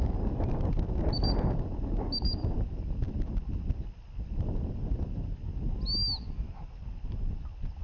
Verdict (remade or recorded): recorded